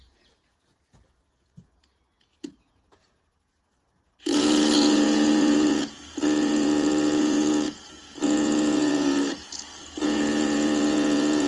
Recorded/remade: remade